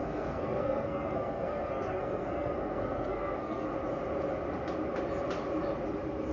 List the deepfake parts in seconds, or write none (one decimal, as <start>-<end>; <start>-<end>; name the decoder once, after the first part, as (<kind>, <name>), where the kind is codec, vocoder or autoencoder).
0.0-3.7 (codec, SNAC)